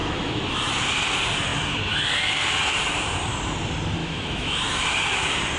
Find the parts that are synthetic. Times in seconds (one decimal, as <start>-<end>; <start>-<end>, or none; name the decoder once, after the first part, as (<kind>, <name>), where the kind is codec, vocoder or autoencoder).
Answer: 0.0-0.7 (autoencoder, DAC-VAE); 4.0-4.8